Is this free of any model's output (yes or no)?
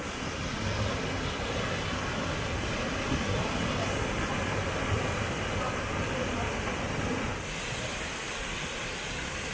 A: yes